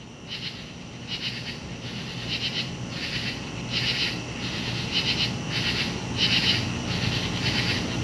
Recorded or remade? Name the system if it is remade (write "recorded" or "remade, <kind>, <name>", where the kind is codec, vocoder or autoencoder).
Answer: recorded